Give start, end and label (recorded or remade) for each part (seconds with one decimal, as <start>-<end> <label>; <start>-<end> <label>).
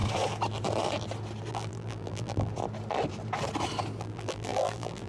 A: 0.0-1.5 recorded; 1.5-2.5 remade; 2.5-4.0 recorded; 4.0-5.1 remade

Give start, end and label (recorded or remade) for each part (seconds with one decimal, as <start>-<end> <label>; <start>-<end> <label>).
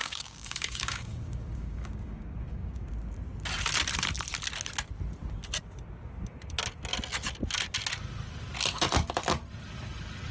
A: 0.0-2.9 remade; 2.9-10.3 recorded